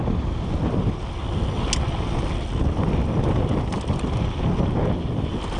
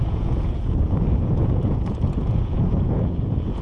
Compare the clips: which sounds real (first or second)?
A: first